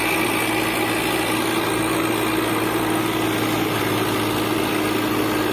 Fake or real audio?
real